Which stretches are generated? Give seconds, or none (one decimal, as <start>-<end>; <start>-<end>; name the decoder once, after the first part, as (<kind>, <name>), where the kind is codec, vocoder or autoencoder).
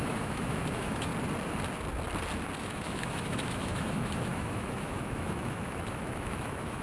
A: 0.0-1.1 (autoencoder, DAC-VAE); 2.6-6.8